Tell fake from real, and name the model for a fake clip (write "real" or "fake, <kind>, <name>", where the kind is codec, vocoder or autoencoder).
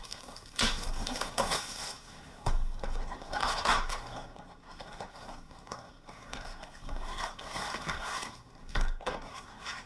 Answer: fake, codec, SNAC